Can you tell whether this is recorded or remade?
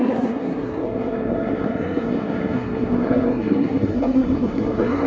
remade